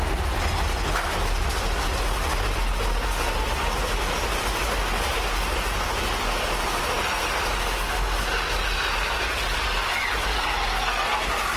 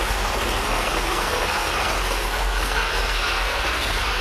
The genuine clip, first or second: first